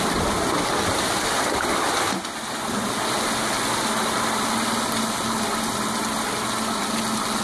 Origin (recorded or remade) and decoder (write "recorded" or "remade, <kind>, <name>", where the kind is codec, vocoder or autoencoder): recorded